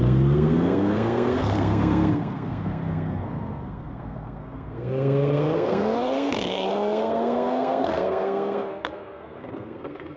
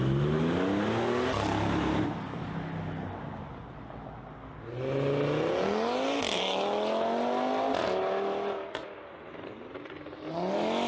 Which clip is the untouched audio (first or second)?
second